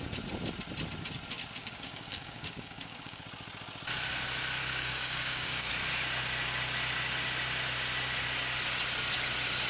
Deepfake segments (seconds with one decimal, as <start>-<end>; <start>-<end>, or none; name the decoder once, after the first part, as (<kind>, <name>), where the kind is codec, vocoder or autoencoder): 1.6-3.2 (codec, DAC); 4.6-5.7